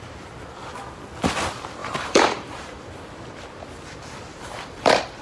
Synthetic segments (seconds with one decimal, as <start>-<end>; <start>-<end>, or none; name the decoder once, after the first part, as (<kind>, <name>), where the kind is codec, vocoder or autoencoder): 1.8-2.9 (vocoder, BigVGAN v2); 4.3-5.2